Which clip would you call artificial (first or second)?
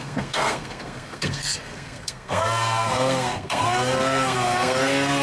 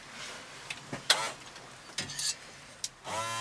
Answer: first